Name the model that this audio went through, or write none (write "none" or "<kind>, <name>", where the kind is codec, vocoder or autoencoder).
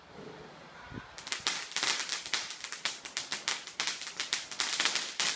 none